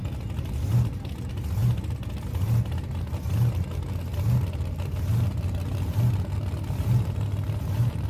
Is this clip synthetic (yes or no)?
no